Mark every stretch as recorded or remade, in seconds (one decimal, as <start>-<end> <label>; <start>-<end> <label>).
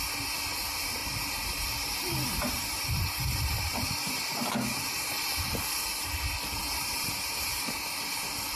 0.0-1.0 recorded; 1.0-5.4 remade; 5.4-6.6 recorded; 6.6-7.8 remade; 7.8-8.6 recorded